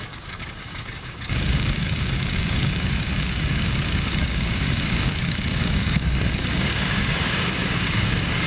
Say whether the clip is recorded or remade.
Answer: remade